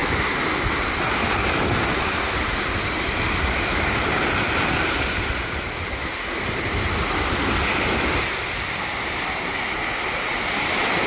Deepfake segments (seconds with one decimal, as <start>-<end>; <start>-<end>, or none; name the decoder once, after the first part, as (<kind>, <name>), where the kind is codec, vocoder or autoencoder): none